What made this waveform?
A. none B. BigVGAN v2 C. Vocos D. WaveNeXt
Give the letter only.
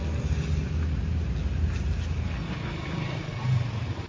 A